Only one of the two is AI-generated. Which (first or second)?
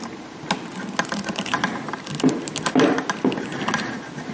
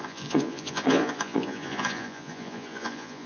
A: second